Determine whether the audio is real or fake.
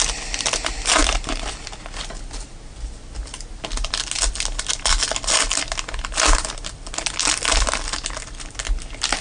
real